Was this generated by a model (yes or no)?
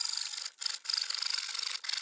no